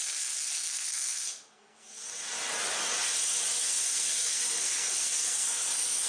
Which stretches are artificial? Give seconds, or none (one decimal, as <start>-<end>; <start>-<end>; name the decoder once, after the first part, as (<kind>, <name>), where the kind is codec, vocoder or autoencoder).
0.0-2.1 (codec, SNAC); 3.6-6.1